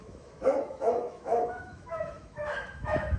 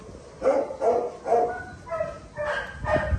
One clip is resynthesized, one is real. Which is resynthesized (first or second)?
first